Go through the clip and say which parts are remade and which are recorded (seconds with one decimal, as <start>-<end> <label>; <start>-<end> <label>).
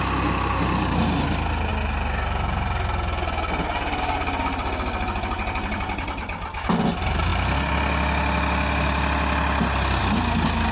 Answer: 0.0-10.7 recorded